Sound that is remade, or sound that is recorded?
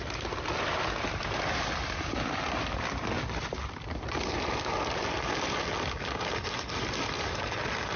recorded